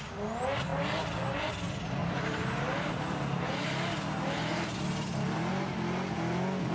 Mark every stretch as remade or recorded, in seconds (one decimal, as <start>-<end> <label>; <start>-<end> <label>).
0.0-2.0 recorded; 2.0-3.6 remade; 3.6-6.7 recorded